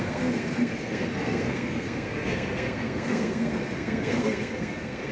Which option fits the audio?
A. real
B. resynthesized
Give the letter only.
B